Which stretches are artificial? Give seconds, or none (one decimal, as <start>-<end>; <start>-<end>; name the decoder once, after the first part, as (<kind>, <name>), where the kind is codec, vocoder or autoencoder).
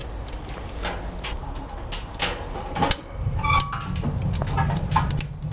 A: none